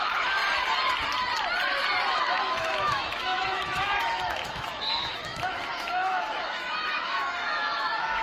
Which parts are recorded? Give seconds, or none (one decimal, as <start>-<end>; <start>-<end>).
0.4-2.1